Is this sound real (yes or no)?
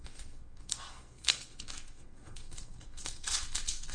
no